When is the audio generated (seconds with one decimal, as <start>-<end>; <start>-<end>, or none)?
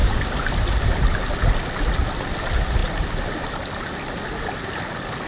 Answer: none